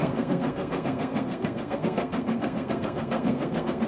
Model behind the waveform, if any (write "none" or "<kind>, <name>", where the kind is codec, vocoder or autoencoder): codec, SNAC